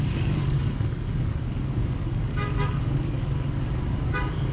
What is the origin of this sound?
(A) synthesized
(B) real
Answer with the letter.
A